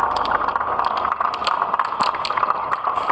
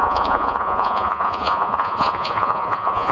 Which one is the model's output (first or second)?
second